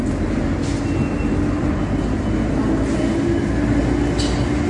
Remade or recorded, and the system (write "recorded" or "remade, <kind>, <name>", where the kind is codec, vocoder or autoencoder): recorded